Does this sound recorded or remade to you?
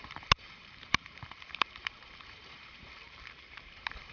remade